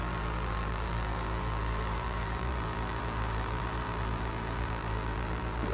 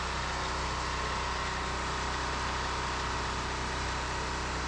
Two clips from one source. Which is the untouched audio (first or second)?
second